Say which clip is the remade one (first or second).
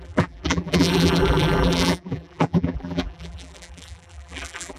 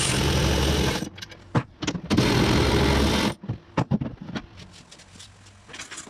first